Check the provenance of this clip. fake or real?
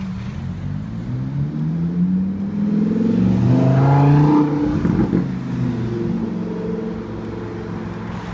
real